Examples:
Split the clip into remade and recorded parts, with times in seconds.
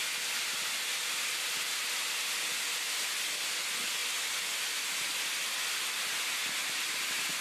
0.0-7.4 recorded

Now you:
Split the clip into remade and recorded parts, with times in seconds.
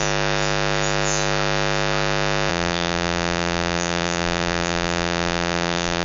0.0-2.5 recorded; 2.5-6.0 remade